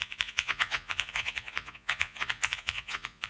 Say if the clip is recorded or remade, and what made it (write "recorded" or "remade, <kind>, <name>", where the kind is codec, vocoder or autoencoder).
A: remade, vocoder, Vocos